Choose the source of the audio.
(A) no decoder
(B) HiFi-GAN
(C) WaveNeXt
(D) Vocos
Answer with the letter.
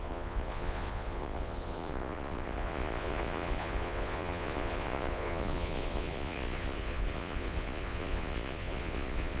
D